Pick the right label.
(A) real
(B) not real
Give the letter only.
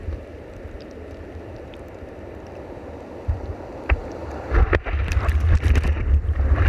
B